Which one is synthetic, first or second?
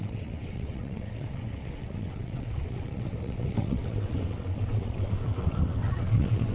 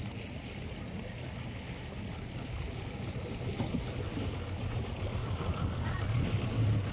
first